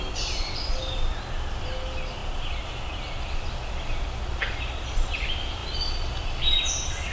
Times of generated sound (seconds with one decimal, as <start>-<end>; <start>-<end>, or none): none